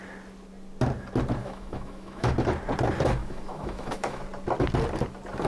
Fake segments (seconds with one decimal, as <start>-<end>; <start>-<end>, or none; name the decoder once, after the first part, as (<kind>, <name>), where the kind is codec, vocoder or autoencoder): 1.4-2.3 (autoencoder, DAC-VAE); 3.2-4.2